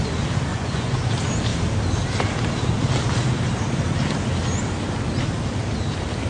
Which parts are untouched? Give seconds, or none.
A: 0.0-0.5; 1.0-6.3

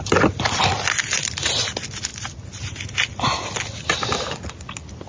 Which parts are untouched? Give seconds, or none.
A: 0.0-5.1

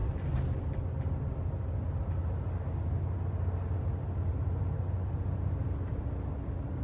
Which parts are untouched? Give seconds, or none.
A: 0.0-6.8